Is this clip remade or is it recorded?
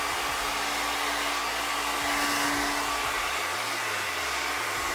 recorded